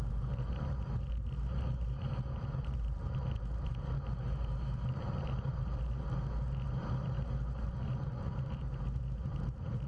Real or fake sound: fake